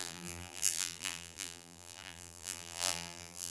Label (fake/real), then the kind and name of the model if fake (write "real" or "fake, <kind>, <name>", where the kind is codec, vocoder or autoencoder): fake, vocoder, BigVGAN v2